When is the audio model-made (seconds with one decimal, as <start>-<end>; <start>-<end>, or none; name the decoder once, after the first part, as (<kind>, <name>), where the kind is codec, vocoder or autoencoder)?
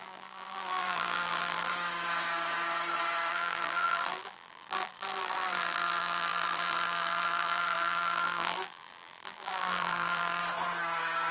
0.0-1.7 (vocoder, BigVGAN v2); 3.3-10.4